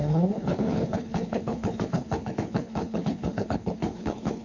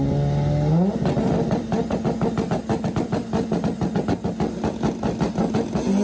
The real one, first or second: second